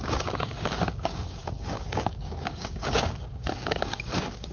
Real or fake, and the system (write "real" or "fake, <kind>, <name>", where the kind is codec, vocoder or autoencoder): fake, codec, DAC